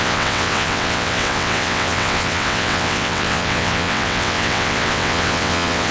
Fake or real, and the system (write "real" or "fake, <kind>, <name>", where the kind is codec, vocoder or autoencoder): fake, vocoder, WaveNeXt